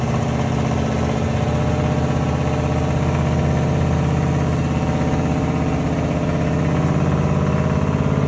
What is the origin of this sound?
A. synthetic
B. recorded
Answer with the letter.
B